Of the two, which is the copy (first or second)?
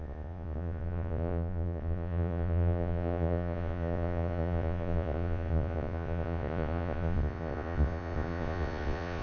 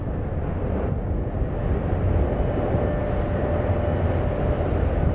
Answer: first